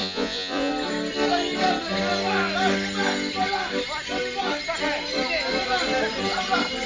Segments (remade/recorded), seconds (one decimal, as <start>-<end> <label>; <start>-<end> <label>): 0.0-0.7 remade; 0.7-6.9 recorded